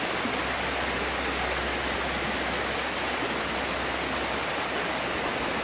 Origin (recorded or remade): recorded